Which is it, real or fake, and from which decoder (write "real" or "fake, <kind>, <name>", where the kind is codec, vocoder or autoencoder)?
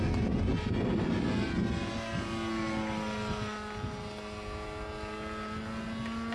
real